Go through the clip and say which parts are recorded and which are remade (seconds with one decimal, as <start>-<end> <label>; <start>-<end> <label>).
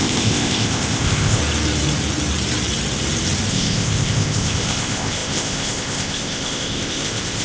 0.0-1.4 remade; 1.4-3.5 recorded; 3.5-7.4 remade